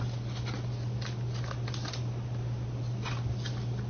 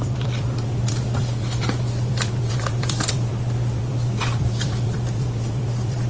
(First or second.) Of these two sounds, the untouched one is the first